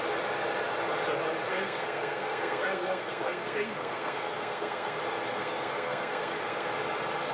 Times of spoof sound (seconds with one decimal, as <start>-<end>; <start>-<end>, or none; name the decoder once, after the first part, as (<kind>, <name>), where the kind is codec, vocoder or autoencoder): 1.5-5.0 (codec, SNAC); 5.4-6.7